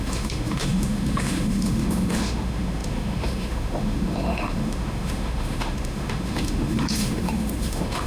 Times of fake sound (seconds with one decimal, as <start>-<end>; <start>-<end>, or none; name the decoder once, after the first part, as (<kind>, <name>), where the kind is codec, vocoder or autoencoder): 0.0-8.1 (autoencoder, DAC-VAE)